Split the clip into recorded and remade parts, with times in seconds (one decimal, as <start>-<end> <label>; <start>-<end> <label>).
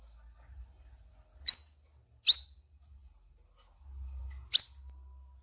0.0-5.4 recorded